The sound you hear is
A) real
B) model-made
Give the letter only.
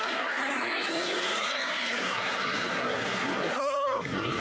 B